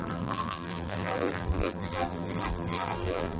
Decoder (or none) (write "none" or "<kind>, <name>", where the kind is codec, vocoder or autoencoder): vocoder, BigVGAN v2